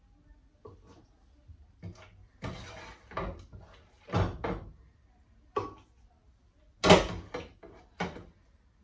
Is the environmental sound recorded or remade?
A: recorded